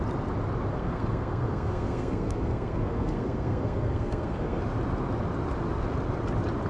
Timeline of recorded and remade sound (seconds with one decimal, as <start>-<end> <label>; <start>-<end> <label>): 0.0-0.7 recorded; 0.7-4.6 remade; 4.6-6.7 recorded